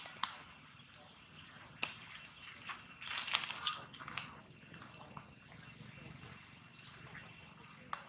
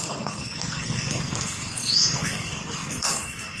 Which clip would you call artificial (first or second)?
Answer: second